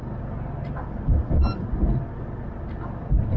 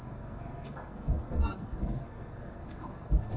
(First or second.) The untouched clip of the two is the first